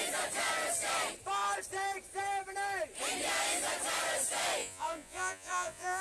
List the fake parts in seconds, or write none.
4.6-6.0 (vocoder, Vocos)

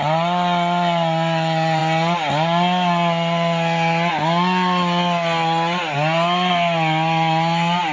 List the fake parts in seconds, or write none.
none

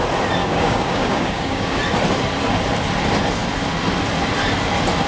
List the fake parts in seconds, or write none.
0.4-1.8 (codec, DAC)

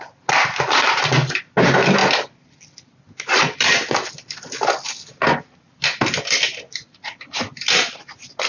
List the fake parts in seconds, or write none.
none